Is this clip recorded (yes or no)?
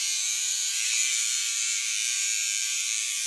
no